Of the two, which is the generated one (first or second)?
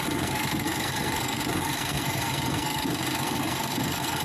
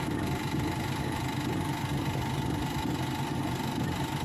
first